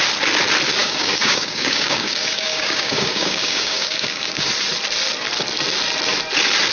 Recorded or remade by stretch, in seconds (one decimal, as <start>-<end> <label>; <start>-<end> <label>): 0.0-0.8 recorded; 0.8-4.5 remade; 4.5-6.7 recorded